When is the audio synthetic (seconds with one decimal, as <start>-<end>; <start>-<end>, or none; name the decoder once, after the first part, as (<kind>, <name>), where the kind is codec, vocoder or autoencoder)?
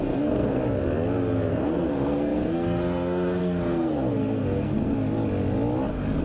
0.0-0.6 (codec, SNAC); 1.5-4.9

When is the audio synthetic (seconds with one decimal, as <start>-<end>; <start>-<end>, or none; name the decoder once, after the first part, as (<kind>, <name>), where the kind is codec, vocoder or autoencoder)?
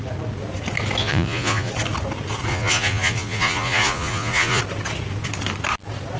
1.0-1.7 (vocoder, Vocos); 2.5-4.6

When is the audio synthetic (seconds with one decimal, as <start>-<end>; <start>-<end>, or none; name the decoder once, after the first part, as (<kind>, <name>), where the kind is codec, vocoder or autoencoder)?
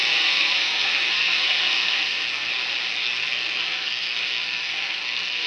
0.0-2.5 (codec, SNAC); 2.9-5.5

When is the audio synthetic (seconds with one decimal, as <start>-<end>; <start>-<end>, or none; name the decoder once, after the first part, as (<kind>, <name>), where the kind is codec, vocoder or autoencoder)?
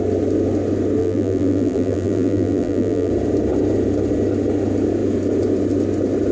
1.0-3.1 (vocoder, BigVGAN v2)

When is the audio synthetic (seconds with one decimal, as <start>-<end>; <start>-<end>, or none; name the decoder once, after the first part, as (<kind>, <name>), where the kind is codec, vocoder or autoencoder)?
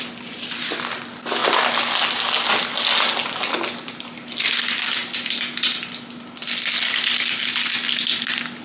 none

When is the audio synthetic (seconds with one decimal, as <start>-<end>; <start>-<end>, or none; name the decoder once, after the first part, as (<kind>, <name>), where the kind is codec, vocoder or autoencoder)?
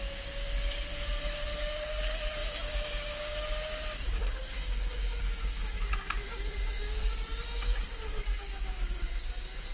0.0-9.7 (codec, DAC)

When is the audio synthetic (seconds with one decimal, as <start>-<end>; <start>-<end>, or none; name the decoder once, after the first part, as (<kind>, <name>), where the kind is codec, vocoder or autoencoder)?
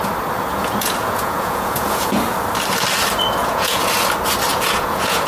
0.5-2.2 (vocoder, Vocos); 3.4-3.9; 4.5-5.3